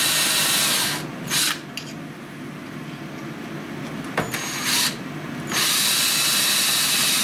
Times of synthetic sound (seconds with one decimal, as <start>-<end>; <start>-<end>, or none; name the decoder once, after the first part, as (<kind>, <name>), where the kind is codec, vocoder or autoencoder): none